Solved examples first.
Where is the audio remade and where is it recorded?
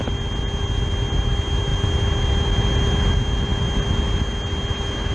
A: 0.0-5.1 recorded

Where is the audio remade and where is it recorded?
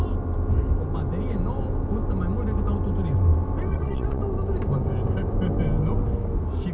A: 0.0-3.7 recorded; 3.7-4.2 remade; 4.2-6.7 recorded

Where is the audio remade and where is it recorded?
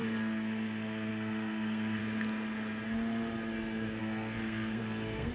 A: 0.0-2.0 remade; 2.0-4.0 recorded; 4.0-5.3 remade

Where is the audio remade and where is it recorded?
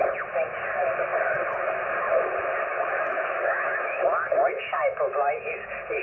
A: 0.0-2.7 recorded; 2.7-5.5 remade; 5.5-6.0 recorded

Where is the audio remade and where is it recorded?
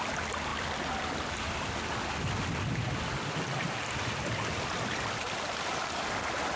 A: 0.0-6.6 recorded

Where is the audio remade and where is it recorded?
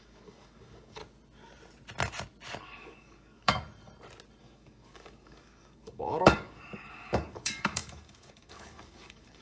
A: 0.0-1.0 remade; 1.0-2.6 recorded; 2.6-3.6 remade; 3.6-4.4 recorded; 4.4-9.4 remade